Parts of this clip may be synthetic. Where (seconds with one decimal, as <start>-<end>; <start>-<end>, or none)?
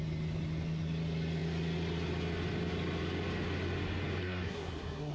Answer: 4.2-5.1